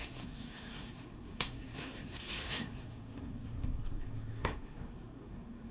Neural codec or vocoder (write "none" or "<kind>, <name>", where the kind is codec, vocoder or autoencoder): codec, SNAC